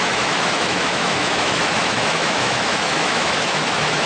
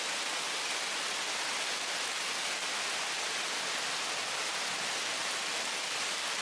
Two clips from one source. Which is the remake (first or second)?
first